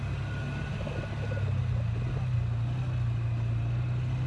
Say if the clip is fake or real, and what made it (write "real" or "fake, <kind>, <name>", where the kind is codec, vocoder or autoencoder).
real